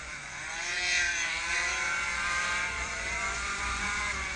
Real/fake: fake